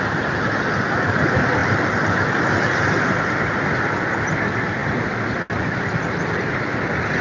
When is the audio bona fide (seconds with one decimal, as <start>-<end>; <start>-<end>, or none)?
0.0-7.2